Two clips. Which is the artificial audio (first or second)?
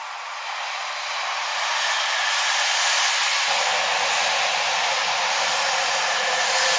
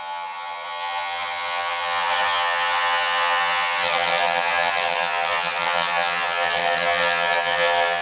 second